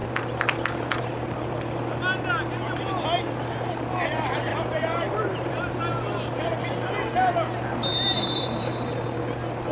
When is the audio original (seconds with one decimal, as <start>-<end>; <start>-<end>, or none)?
0.0-4.5; 5.5-7.9; 8.8-9.7